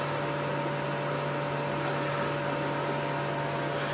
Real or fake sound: real